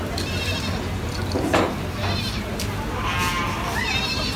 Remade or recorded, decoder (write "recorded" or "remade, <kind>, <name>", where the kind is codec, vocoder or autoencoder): remade, vocoder, BigVGAN v2